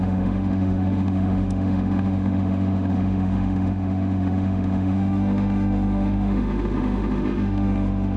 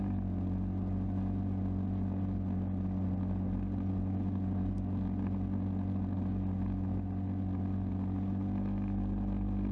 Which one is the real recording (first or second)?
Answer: second